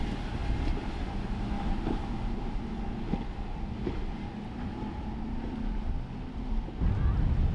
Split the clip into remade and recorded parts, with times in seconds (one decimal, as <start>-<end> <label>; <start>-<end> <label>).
0.0-7.5 recorded